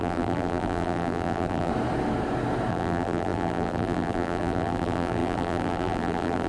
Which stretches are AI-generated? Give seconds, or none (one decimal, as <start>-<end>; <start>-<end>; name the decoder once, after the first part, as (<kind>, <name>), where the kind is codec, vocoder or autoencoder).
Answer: 0.0-1.7 (vocoder, BigVGAN v2); 2.7-6.5